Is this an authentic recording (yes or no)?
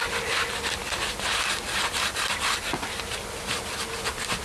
yes